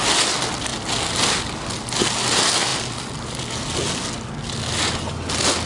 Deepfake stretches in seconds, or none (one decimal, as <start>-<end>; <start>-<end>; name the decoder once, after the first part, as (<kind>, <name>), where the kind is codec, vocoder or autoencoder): none